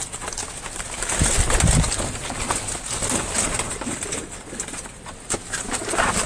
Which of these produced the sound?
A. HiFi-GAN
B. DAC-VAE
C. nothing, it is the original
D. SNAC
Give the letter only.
C